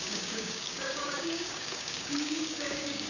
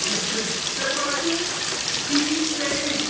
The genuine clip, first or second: second